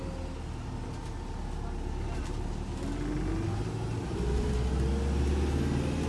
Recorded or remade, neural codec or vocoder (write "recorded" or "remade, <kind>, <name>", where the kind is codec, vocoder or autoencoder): recorded